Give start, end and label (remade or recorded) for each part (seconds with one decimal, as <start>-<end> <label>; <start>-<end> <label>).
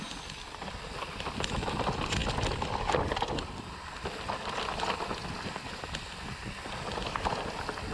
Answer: 0.0-7.9 recorded